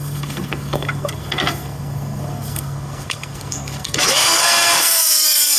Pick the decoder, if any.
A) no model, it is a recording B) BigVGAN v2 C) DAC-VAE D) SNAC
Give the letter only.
D